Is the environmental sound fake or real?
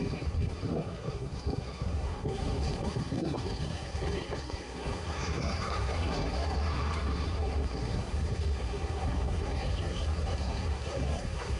fake